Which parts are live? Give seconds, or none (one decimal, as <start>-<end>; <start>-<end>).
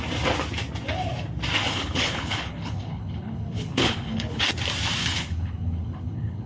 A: 0.0-1.6; 4.4-5.0